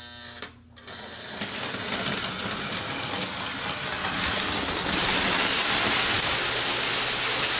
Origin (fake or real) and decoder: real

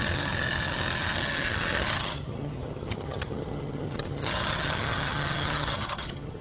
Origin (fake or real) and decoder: fake, vocoder, HiFi-GAN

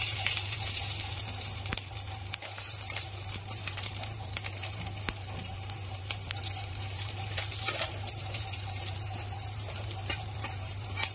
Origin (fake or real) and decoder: fake, vocoder, BigVGAN v2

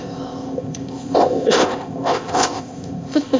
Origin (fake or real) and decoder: fake, codec, ZipCodec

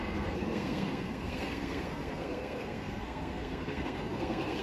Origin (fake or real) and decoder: fake, codec, SNAC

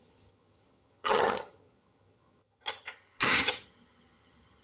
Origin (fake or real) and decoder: fake, vocoder, HiFi-GAN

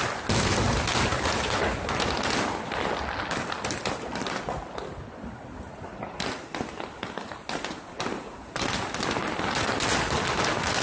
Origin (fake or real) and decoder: real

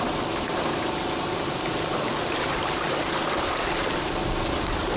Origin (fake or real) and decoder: fake, vocoder, BigVGAN v2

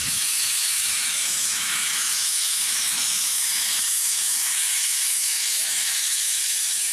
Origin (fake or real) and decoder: fake, autoencoder, DAC-VAE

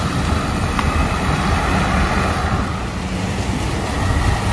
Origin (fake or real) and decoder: real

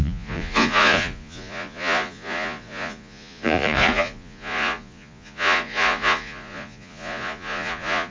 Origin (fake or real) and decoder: fake, vocoder, Vocos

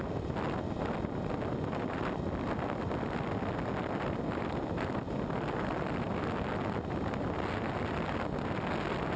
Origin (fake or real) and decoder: real